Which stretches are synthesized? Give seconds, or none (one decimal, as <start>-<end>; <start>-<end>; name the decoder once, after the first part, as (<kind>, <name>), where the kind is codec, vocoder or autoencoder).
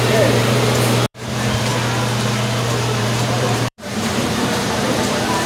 0.0-1.7 (vocoder, BigVGAN v2); 3.0-5.5